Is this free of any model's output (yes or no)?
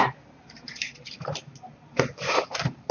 yes